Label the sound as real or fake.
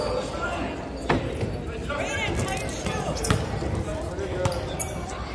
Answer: real